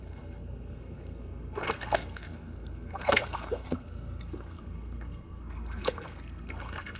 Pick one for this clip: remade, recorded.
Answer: remade